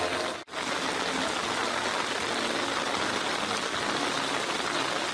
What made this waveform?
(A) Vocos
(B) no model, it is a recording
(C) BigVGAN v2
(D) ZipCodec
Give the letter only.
B